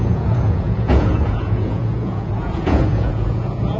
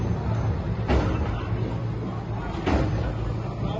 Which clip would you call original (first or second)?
second